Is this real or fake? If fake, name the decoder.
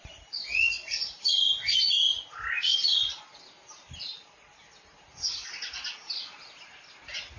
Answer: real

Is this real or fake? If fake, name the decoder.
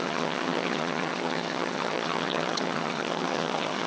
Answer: fake, vocoder, HiFi-GAN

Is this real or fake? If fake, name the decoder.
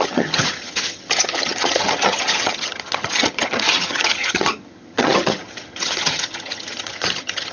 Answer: fake, vocoder, HiFi-GAN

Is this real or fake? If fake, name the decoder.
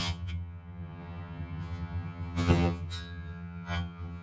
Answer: fake, vocoder, HiFi-GAN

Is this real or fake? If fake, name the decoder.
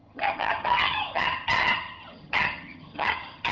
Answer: fake, vocoder, HiFi-GAN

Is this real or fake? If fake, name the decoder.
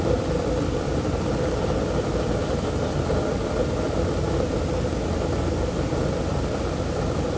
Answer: real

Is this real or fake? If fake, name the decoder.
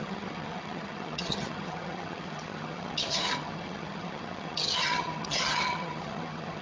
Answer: fake, vocoder, HiFi-GAN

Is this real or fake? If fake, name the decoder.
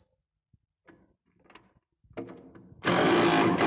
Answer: real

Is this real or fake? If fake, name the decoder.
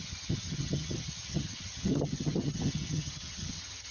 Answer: fake, vocoder, HiFi-GAN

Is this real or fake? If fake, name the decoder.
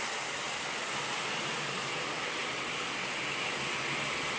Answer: real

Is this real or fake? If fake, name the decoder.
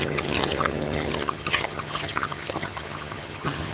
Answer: fake, vocoder, HiFi-GAN